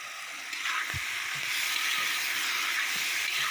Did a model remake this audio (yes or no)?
no